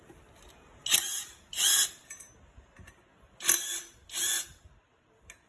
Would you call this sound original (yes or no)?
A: yes